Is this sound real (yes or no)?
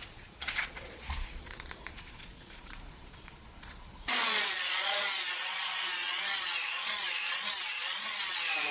no